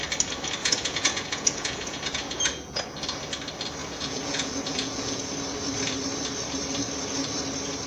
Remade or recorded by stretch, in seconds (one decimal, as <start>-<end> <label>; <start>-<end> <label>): 0.0-0.6 recorded; 0.6-2.8 remade; 2.8-3.8 recorded; 3.8-5.3 remade; 5.3-7.9 recorded